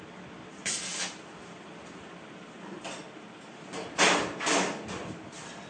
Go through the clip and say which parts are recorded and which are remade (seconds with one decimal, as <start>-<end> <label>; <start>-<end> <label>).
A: 0.0-5.7 recorded